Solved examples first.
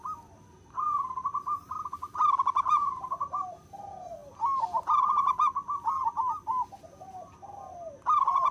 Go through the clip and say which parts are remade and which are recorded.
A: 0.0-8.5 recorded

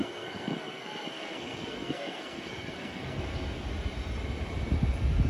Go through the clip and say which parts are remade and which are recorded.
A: 0.0-3.2 remade; 3.2-5.3 recorded

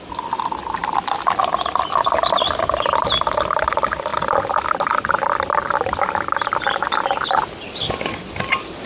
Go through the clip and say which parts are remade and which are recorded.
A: 0.0-8.9 recorded

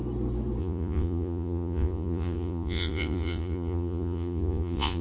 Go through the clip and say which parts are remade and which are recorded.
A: 0.0-0.6 recorded; 0.6-5.0 remade

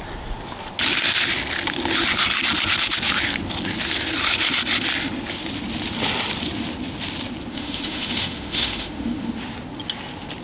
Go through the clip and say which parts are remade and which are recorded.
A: 0.0-7.5 recorded; 7.5-9.3 remade; 9.3-10.4 recorded

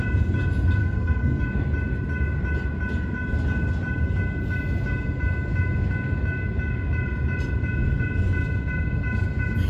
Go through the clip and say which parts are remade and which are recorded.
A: 0.0-0.8 recorded; 0.8-1.4 remade; 1.4-9.7 recorded

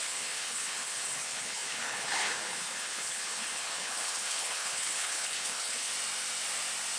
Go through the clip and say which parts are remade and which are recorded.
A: 0.0-5.9 remade; 5.9-7.0 recorded

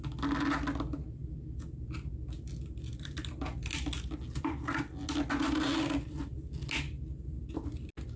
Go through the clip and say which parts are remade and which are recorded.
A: 0.0-8.2 recorded